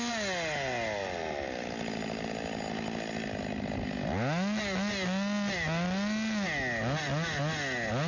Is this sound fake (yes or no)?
no